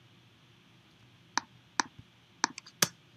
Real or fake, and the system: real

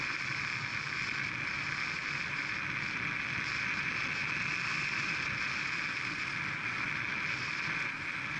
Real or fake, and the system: real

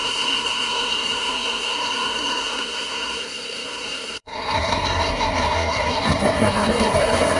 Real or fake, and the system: fake, codec, SNAC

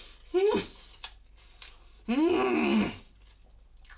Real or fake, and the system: real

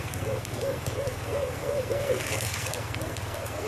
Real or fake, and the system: fake, codec, SNAC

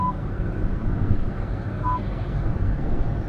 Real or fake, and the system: fake, codec, SNAC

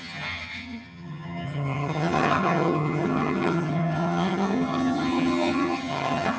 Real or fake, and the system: fake, vocoder, HiFi-GAN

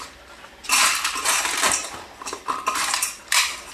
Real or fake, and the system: real